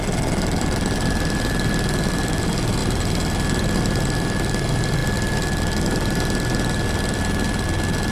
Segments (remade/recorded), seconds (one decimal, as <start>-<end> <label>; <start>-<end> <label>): 0.0-8.1 remade